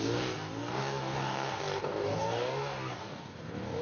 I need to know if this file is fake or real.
fake